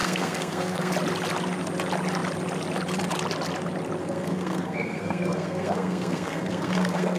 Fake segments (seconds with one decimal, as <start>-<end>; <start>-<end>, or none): 0.0-0.9; 4.0-7.2